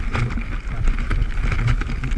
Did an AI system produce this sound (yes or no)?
no